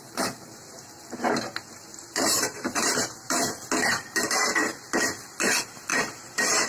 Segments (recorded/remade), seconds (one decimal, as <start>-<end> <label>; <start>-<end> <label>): 0.0-1.9 recorded; 1.9-3.5 remade; 3.5-5.9 recorded; 5.9-6.7 remade